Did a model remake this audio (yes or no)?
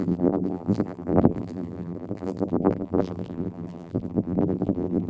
yes